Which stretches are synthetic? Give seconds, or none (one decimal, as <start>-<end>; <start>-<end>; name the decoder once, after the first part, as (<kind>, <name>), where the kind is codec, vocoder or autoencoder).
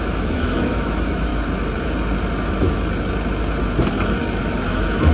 0.0-1.3 (autoencoder, DAC-VAE); 4.4-5.1